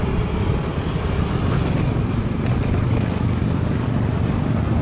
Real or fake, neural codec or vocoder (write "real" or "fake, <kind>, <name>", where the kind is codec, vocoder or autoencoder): real